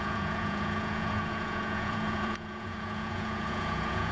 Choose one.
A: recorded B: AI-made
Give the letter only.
B